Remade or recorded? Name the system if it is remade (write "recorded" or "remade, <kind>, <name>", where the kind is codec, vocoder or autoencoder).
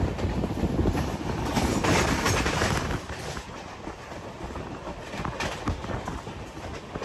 recorded